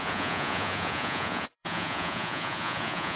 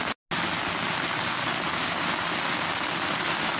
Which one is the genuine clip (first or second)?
second